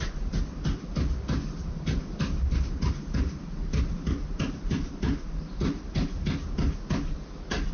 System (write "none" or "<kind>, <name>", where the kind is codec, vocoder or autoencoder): none